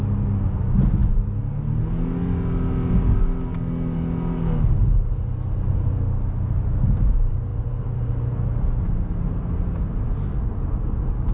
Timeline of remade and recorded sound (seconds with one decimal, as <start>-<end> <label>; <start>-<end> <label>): 0.0-11.3 recorded